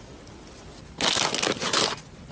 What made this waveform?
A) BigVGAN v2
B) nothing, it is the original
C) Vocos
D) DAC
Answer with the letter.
B